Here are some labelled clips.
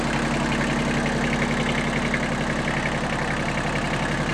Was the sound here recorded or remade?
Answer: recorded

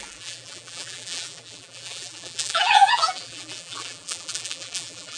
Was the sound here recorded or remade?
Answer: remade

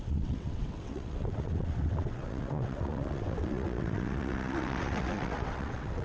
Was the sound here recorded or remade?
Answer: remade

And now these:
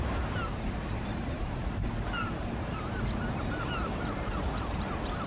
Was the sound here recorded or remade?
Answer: remade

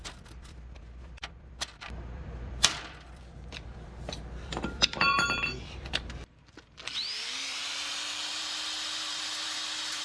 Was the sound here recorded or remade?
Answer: remade